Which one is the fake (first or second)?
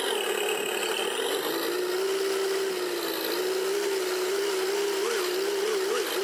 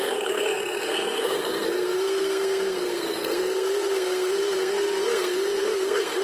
second